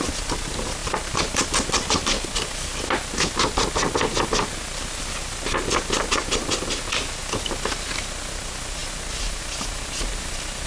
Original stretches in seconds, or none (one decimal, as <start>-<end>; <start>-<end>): 0.0-10.7